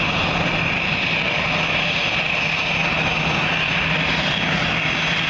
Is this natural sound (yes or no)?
yes